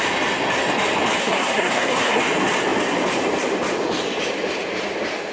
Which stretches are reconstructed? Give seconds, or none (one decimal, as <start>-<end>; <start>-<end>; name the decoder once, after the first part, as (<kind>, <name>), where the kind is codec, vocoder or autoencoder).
1.2-2.2 (codec, SNAC)